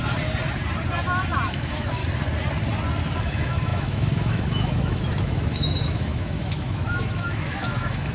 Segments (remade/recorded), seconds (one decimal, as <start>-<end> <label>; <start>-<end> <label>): 0.0-1.5 recorded; 1.5-2.0 remade; 2.0-3.2 recorded; 3.2-8.1 remade